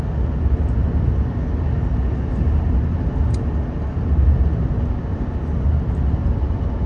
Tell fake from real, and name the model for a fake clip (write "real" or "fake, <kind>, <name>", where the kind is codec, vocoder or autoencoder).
real